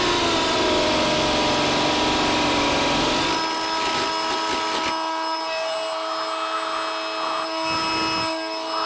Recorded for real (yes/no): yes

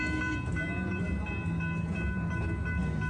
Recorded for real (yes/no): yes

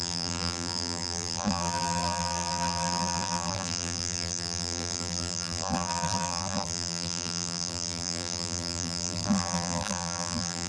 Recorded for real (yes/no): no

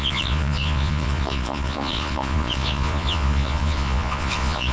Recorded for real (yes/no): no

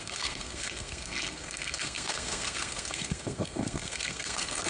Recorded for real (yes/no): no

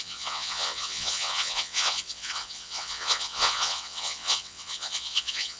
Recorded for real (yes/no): no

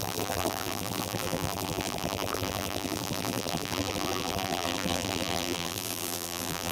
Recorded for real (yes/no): no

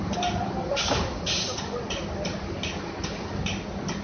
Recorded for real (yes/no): yes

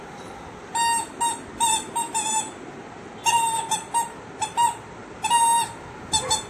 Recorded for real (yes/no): yes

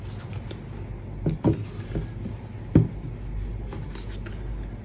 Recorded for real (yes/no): yes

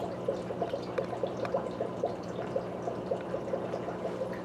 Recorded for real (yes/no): yes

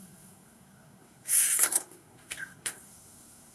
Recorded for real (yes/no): no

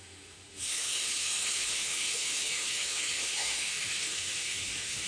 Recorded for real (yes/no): no